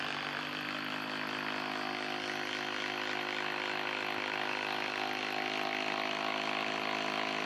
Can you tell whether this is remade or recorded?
recorded